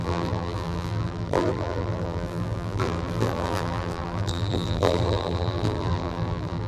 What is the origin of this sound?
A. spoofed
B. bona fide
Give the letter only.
A